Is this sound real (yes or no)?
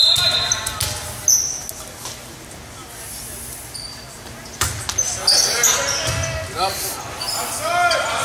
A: yes